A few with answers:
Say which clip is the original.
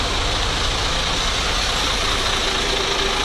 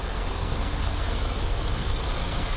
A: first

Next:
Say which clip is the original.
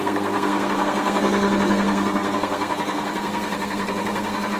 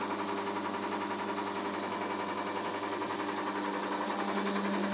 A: second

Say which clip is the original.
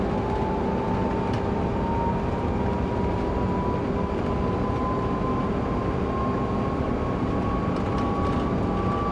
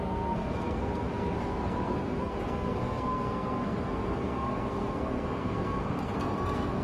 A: first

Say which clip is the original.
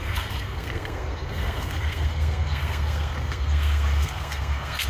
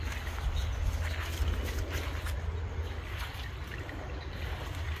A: second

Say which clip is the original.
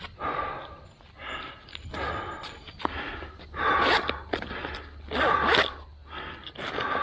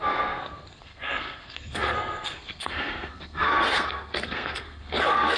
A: first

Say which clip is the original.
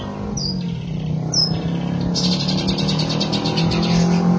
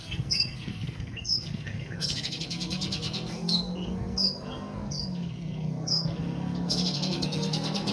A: first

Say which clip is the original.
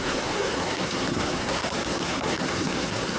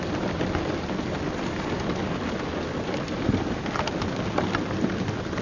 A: second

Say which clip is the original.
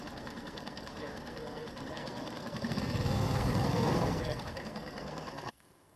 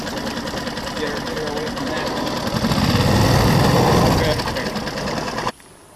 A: second